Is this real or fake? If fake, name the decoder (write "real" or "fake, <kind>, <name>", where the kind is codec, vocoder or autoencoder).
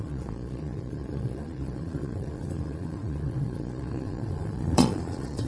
fake, vocoder, Vocos